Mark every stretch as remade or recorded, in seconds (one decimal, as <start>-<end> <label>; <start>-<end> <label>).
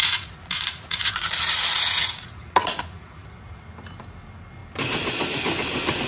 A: 0.0-3.7 remade; 3.7-6.1 recorded